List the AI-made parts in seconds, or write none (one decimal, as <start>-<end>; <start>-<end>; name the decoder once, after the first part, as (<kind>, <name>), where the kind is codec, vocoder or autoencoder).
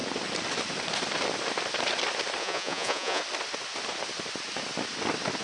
2.4-3.2 (vocoder, Vocos)